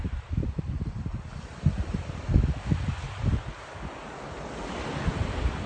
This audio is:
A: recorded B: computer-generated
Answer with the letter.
A